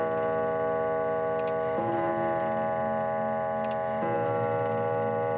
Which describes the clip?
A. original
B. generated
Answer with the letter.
A